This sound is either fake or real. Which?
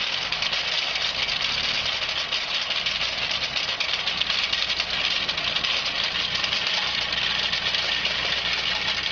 real